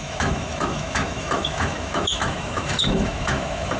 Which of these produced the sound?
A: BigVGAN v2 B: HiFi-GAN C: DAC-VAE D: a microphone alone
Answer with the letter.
C